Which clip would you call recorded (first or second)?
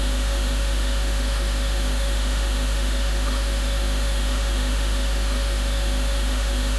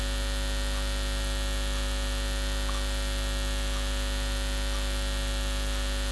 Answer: second